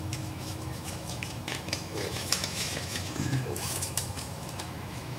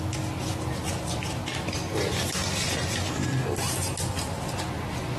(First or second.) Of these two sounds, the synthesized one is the first